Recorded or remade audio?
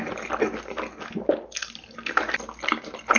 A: recorded